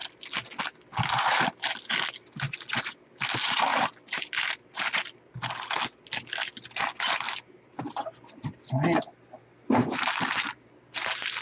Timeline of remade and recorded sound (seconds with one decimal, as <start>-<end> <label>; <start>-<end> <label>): 0.0-11.4 recorded